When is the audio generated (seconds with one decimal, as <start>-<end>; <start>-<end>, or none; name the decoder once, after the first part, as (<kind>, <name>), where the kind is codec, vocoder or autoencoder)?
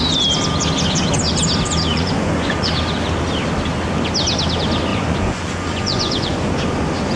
1.9-2.7 (vocoder, Vocos); 4.9-6.5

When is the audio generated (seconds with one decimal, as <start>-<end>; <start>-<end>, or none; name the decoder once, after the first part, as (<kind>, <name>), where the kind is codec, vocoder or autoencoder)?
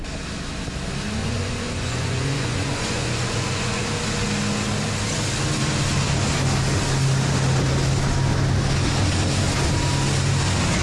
1.2-3.8 (vocoder, Vocos)